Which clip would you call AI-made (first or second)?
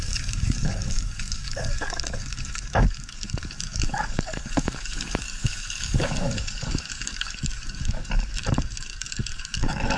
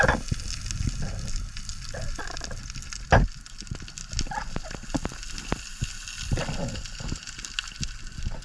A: first